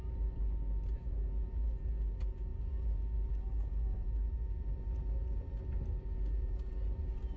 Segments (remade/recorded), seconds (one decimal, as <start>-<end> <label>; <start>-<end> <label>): 0.0-7.4 recorded